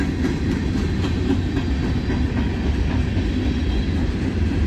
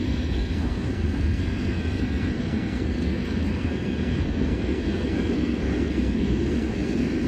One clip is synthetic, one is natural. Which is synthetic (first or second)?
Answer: second